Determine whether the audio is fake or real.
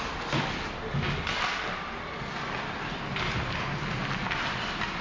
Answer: real